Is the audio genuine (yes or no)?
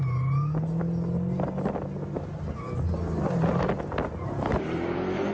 yes